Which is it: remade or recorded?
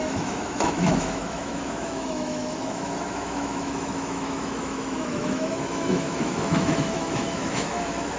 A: remade